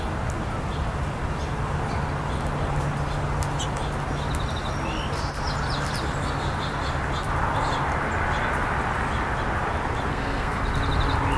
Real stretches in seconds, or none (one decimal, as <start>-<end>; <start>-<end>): 0.0-10.1; 10.6-11.4